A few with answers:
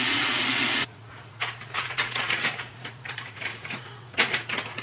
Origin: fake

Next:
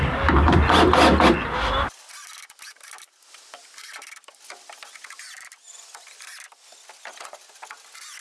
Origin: real